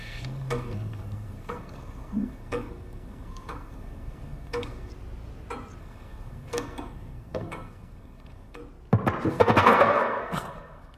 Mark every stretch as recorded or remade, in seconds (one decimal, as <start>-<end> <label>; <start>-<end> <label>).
0.0-4.9 remade; 4.9-5.8 recorded; 5.8-8.6 remade; 8.6-9.3 recorded; 9.3-11.0 remade